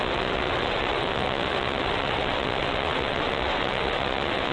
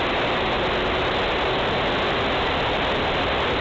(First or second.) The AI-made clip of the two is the first